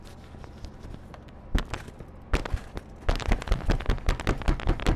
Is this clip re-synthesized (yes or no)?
no